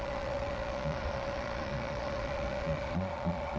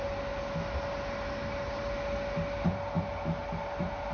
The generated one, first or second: first